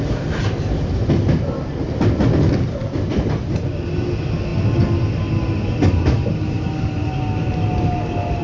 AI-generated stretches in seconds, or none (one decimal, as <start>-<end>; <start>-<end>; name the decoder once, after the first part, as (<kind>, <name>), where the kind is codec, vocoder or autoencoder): none